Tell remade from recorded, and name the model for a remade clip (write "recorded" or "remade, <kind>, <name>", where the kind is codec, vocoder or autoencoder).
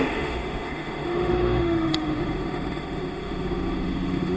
remade, autoencoder, DAC-VAE